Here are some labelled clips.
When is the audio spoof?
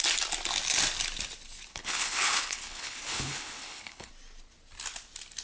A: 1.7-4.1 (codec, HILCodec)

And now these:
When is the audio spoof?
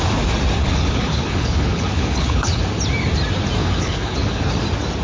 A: 0.6-2.6 (codec, HILCodec); 3.6-4.5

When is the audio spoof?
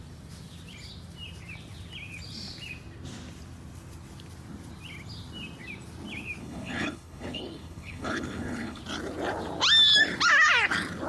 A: 6.4-8.8 (codec, HILCodec)